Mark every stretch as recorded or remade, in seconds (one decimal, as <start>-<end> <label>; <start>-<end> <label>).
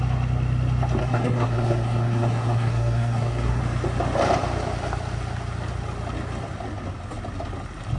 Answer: 0.0-1.0 recorded; 1.0-3.6 remade; 3.6-8.0 recorded